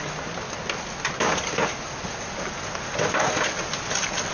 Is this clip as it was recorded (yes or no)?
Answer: yes